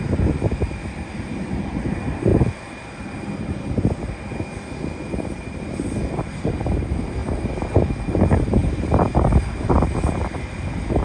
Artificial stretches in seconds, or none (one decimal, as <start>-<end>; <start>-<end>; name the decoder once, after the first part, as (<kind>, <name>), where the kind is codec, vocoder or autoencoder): none